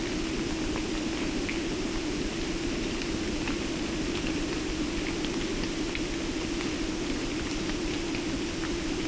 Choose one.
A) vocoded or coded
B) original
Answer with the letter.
B